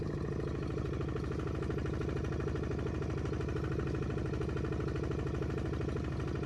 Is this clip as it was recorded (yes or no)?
yes